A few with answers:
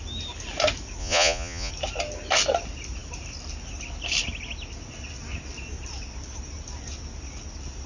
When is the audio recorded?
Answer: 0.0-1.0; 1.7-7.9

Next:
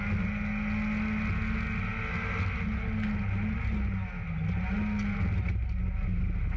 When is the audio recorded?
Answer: 0.0-6.6